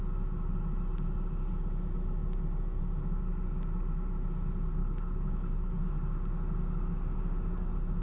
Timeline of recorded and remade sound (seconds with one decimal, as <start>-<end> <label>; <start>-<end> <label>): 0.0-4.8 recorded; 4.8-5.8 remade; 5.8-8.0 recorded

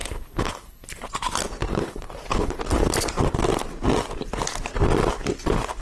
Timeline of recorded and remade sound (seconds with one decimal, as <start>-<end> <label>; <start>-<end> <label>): 0.0-1.1 remade; 1.1-1.7 recorded; 1.7-2.6 remade; 2.6-5.8 recorded

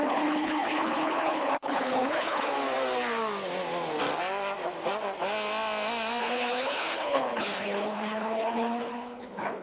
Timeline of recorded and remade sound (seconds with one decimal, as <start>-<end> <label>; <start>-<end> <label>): 0.0-2.5 remade; 2.5-6.2 recorded; 6.2-9.6 remade

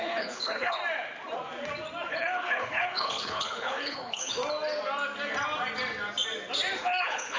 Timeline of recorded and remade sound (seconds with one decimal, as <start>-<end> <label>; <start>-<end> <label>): 0.0-0.8 remade; 0.8-2.1 recorded; 2.1-4.4 remade; 4.4-6.8 recorded; 6.8-7.4 remade